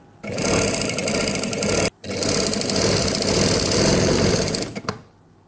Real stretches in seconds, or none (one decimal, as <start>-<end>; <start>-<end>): 0.0-1.0; 4.3-5.5